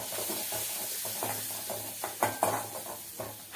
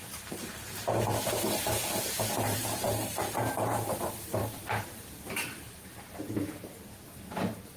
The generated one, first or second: second